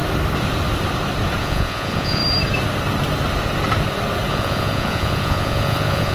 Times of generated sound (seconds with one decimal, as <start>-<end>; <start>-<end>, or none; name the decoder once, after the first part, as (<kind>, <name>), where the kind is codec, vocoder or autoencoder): 1.4-2.2 (vocoder, Vocos); 4.3-6.1